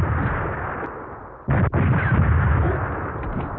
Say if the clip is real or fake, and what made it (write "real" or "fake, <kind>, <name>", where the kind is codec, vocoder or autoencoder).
real